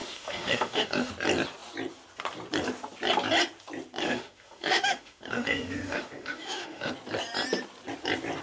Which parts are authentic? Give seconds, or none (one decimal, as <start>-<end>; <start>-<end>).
1.1-4.0; 6.9-8.4